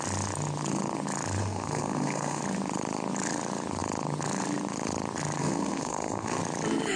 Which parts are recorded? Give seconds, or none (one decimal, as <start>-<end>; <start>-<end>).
0.0-1.4; 2.4-5.4; 6.4-7.0